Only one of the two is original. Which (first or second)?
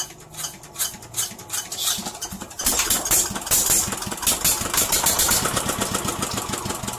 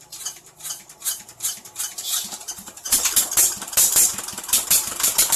first